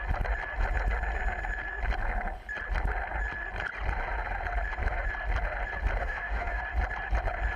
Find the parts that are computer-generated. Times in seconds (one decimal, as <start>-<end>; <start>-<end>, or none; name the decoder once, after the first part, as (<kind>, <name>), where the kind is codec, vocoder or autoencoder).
6.0-6.6 (autoencoder, DAC-VAE)

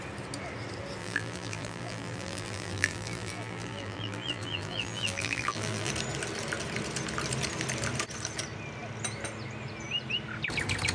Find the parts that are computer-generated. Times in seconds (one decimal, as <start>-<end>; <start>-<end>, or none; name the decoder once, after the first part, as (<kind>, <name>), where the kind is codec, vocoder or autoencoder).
1.0-5.9 (vocoder, BigVGAN v2)

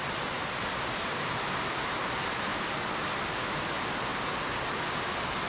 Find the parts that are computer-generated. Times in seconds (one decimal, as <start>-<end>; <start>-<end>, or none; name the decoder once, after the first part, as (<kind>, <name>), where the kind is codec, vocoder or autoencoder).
1.1-2.5 (vocoder, BigVGAN v2); 3.5-4.1; 4.8-5.5

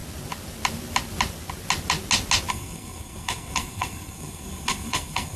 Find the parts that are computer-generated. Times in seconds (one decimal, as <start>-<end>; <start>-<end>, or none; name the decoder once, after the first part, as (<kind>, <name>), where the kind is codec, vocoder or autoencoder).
2.5-5.4 (codec, SNAC)

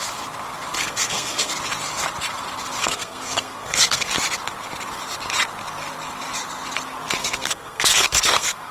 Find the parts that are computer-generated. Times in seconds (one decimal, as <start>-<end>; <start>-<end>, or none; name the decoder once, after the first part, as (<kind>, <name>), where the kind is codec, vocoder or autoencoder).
0.8-1.5 (codec, SNAC); 2.8-4.1; 7.2-8.7

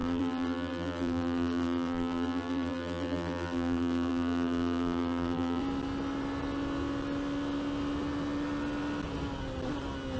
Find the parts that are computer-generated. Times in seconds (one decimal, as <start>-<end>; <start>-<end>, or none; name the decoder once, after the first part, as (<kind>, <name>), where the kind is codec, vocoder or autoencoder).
0.0-5.6 (vocoder, BigVGAN v2)